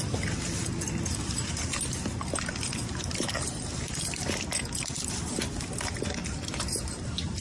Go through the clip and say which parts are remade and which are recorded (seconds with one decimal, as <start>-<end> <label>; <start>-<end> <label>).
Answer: 0.0-6.2 recorded; 6.2-7.4 remade